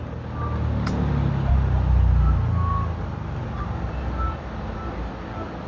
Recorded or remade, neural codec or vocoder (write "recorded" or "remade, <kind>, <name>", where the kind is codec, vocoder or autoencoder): recorded